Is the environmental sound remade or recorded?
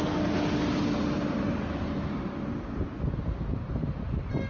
recorded